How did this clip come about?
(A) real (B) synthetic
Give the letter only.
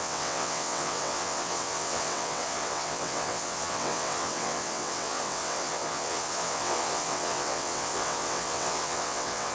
B